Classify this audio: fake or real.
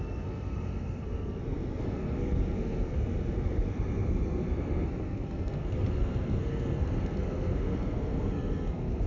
fake